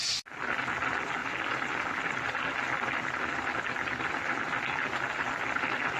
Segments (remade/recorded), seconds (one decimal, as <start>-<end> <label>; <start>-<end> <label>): 0.0-6.0 recorded